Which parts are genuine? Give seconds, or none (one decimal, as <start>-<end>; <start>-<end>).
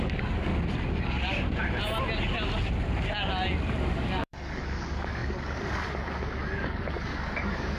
0.5-3.8